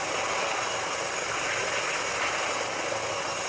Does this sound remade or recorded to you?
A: recorded